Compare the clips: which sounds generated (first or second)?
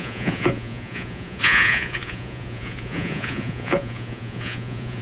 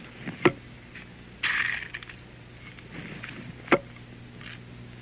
first